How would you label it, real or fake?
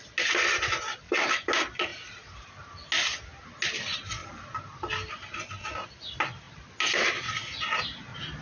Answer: real